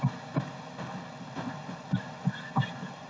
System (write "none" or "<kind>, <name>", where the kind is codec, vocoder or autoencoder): none